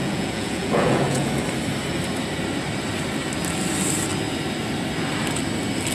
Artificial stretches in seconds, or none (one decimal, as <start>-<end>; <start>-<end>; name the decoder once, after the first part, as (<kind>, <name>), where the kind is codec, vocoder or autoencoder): 0.0-1.3 (vocoder, Vocos)